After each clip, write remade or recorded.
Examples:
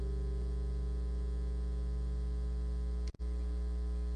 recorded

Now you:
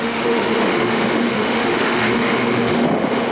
remade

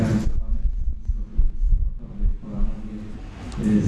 recorded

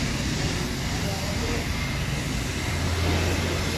recorded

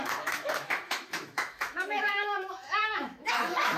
remade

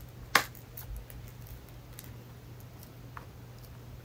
recorded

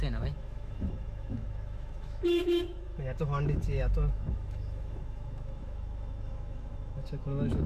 remade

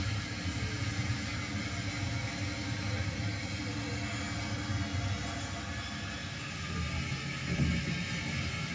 recorded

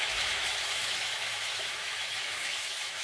remade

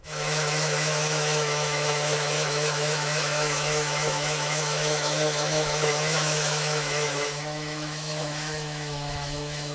remade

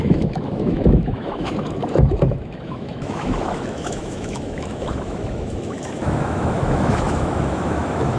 remade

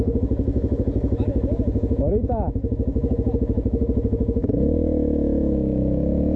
remade